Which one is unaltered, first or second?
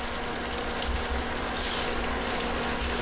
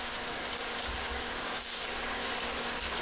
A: first